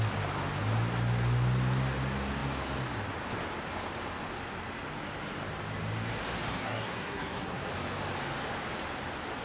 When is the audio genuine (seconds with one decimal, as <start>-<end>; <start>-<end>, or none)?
0.0-6.5; 7.7-9.4